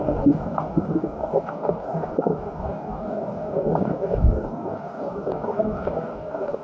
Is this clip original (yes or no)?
no